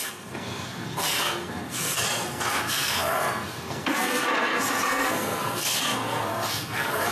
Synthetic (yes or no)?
yes